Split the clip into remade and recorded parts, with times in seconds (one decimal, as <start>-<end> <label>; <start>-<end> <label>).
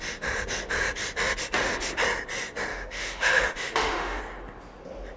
0.0-2.7 recorded; 2.7-4.2 remade; 4.2-5.2 recorded